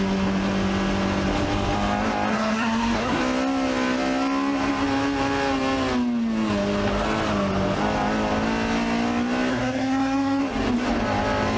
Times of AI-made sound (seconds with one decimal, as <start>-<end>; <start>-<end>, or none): 2.3-3.2; 9.5-10.4